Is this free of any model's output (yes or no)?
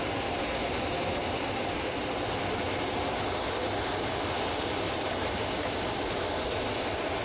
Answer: yes